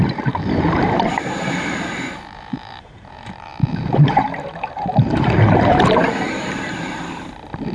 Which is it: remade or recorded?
remade